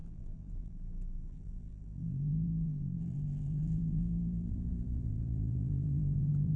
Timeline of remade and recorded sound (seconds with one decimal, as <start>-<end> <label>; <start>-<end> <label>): 0.0-6.6 remade